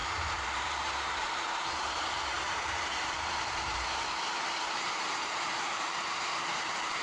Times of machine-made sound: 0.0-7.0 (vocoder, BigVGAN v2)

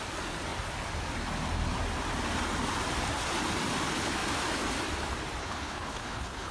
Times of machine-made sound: 5.4-6.5 (codec, HILCodec)